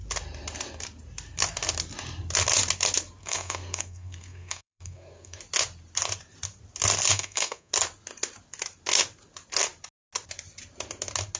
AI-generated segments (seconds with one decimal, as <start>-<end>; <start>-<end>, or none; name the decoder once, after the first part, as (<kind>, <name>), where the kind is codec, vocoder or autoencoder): 3.2-5.4 (codec, SNAC); 7.1-7.7